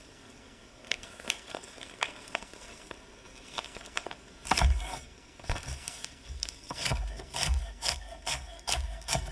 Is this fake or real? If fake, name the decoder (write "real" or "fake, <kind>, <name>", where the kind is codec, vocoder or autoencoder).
fake, codec, SNAC